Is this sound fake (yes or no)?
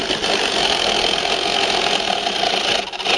no